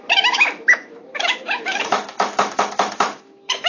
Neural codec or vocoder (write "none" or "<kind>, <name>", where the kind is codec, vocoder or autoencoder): autoencoder, DAC-VAE